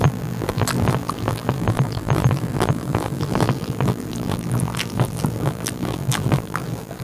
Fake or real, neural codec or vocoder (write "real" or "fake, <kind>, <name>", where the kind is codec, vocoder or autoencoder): fake, vocoder, BigVGAN v2